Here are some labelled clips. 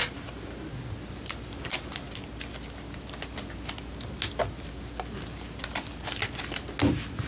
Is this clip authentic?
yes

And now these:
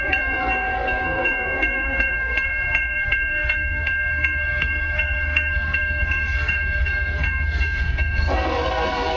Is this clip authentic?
no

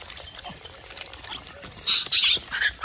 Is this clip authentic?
yes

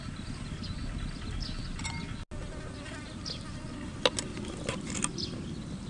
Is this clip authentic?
yes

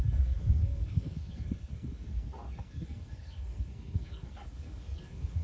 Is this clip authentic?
no